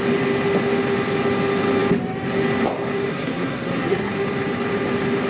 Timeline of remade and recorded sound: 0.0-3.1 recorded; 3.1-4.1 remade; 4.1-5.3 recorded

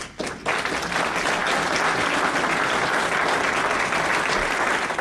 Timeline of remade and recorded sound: 0.0-5.0 recorded

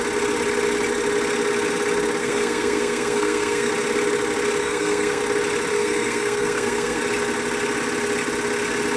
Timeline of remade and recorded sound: 0.0-2.2 recorded; 2.2-3.7 remade; 3.7-4.6 recorded; 4.6-5.2 remade; 5.2-5.7 recorded; 5.7-7.0 remade; 7.0-9.0 recorded

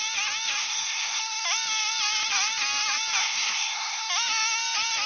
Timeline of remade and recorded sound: 0.0-0.6 recorded; 0.6-1.2 remade; 1.2-3.2 recorded; 3.2-4.0 remade; 4.0-5.1 recorded

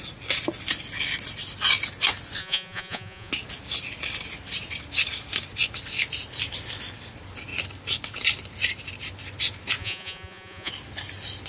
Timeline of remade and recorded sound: 0.0-2.4 recorded; 2.4-3.3 remade; 3.3-9.8 recorded; 9.8-10.7 remade; 10.7-11.5 recorded